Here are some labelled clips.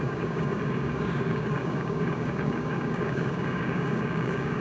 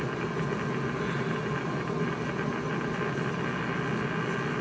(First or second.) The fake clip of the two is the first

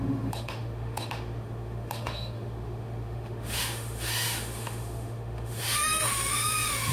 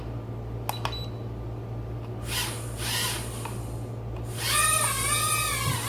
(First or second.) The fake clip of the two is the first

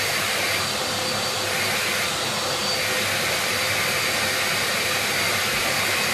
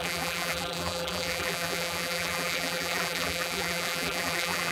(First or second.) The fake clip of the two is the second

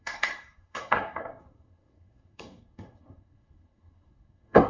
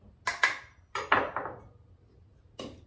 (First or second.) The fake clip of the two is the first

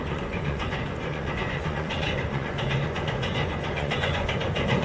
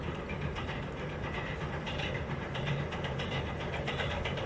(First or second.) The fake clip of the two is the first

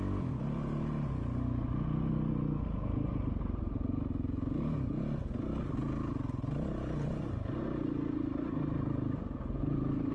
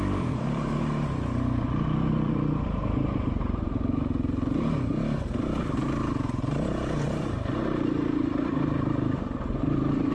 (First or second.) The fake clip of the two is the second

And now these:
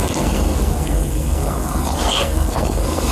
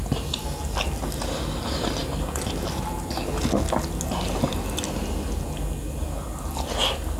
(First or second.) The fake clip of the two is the first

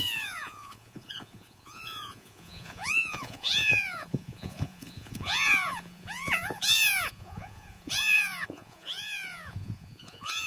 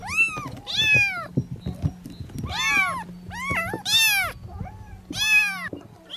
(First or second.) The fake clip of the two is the first